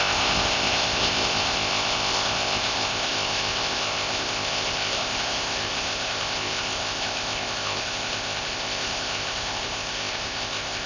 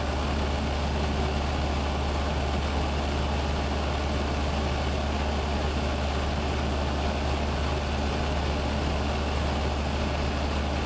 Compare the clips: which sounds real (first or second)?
second